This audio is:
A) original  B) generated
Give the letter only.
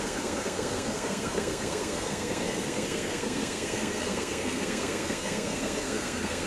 B